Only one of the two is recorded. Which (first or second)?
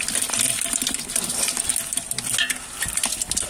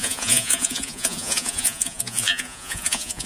first